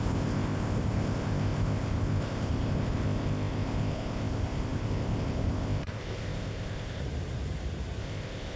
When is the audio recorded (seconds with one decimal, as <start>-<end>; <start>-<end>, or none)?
7.0-8.0